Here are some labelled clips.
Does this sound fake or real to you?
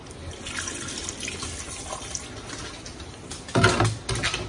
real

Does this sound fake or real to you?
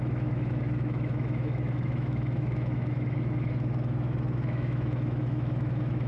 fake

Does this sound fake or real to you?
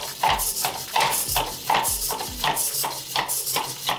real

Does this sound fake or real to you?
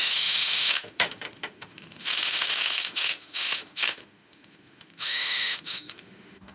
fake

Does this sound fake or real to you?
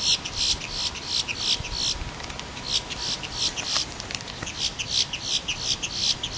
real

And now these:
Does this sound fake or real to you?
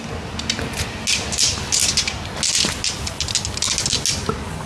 real